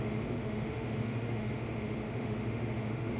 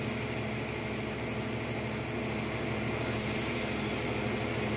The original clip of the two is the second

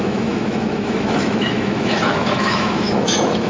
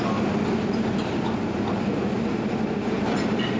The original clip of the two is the second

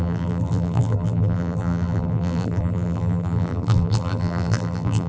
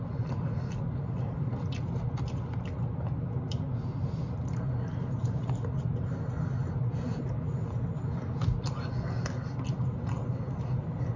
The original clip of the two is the second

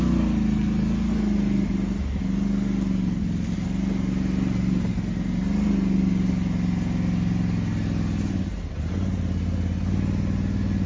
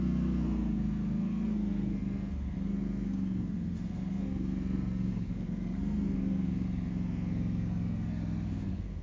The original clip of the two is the first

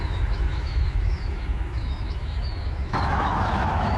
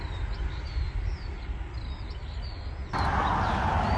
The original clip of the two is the second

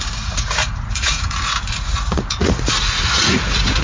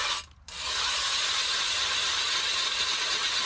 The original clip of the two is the second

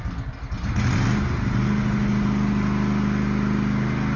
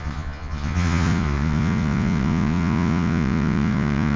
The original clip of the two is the first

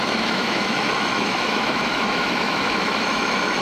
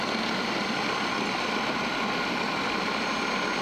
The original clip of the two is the second